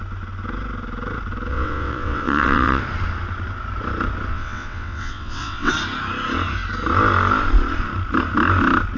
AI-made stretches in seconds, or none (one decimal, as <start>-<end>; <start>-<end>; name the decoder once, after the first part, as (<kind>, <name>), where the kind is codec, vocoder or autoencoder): 1.5-2.8 (vocoder, WaveNeXt); 4.3-5.7